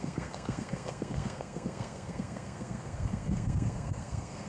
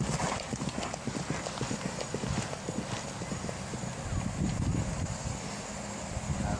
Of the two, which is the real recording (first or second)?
second